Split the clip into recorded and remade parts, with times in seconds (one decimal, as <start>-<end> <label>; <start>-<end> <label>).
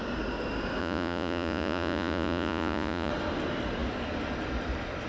0.0-0.8 recorded; 0.8-3.1 remade; 3.1-5.1 recorded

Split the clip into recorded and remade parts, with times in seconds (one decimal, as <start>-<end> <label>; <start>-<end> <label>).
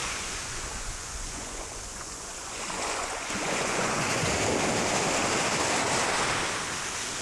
0.0-4.3 remade; 4.3-7.2 recorded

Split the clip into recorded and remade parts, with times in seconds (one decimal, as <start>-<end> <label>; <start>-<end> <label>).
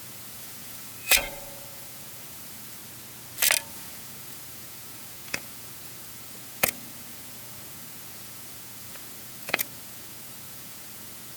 0.0-2.8 remade; 2.8-3.7 recorded; 3.7-11.4 remade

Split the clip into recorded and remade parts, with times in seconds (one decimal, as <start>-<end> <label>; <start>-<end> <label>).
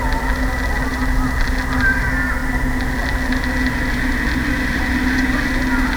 0.0-6.0 recorded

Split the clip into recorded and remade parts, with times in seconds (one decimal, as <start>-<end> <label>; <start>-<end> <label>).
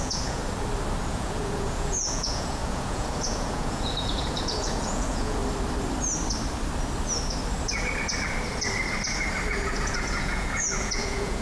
0.0-0.4 remade; 0.4-1.1 recorded; 1.1-5.4 remade; 5.4-9.5 recorded; 9.5-11.4 remade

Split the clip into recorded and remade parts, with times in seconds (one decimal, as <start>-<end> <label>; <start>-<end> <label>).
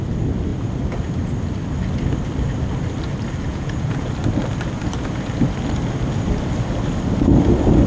0.0-3.5 recorded; 3.5-4.1 remade; 4.1-7.9 recorded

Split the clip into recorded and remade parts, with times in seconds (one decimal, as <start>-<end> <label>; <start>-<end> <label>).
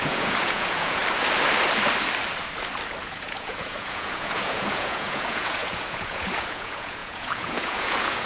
0.0-1.0 remade; 1.0-3.0 recorded; 3.0-8.3 remade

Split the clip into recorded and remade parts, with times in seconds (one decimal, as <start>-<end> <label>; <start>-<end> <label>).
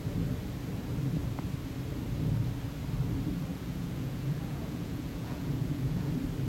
0.0-3.5 recorded; 3.5-6.1 remade; 6.1-6.5 recorded